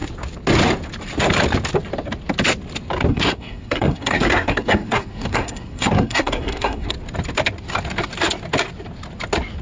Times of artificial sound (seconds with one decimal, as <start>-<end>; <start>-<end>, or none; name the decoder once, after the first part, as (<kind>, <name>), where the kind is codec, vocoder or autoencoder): 3.1-6.9 (codec, SNAC)